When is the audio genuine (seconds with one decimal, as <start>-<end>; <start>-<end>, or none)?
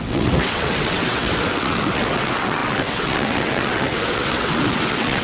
none